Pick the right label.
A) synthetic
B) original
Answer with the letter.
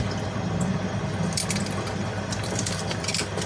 B